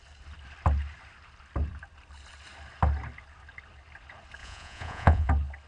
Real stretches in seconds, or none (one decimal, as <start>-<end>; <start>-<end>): 0.0-4.4; 5.3-5.7